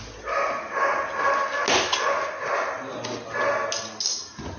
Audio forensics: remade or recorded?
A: recorded